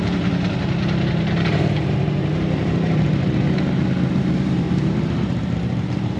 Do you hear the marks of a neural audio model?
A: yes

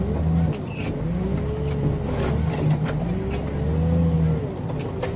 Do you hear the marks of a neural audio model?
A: no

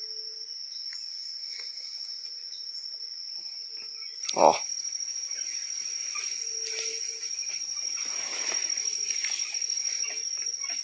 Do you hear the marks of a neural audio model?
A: no